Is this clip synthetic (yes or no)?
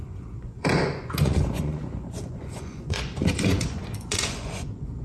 yes